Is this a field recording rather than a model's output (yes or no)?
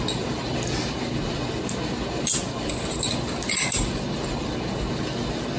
yes